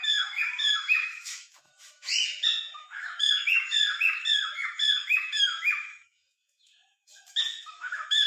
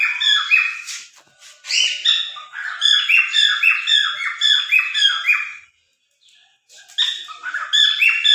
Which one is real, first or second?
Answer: second